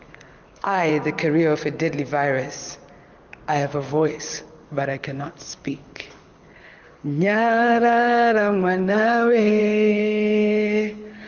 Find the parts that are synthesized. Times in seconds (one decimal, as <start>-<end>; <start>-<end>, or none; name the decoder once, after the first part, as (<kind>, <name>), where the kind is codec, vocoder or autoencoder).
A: 0.0-0.9 (codec, HILCodec); 3.5-11.3